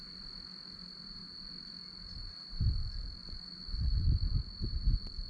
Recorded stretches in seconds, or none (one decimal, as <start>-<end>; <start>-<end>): 0.0-3.2; 4.3-5.3